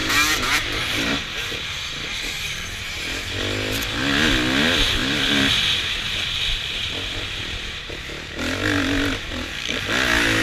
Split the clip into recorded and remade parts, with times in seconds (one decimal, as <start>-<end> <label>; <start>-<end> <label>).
0.0-3.4 remade; 3.4-5.0 recorded; 5.0-7.8 remade; 7.8-10.4 recorded